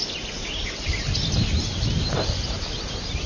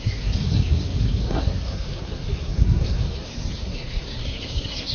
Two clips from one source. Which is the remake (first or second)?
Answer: second